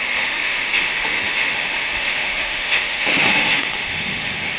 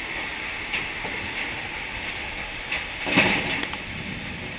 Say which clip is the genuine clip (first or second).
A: second